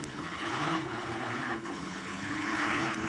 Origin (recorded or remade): remade